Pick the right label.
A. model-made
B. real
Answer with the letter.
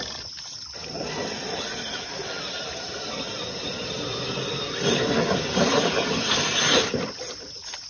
B